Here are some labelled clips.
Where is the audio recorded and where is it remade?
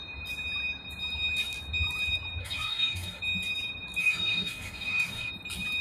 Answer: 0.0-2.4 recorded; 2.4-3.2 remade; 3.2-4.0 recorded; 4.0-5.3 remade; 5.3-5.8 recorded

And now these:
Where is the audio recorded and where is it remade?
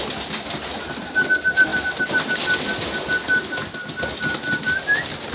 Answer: 0.0-5.3 recorded